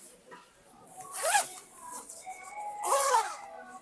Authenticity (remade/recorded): recorded